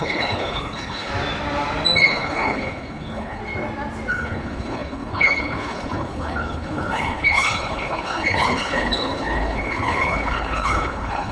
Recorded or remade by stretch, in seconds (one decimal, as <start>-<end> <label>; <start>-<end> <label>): 0.0-1.1 remade; 1.1-2.0 recorded; 2.0-3.4 remade; 3.4-4.1 recorded; 4.1-11.3 remade